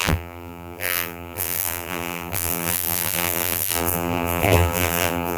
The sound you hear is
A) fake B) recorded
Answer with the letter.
A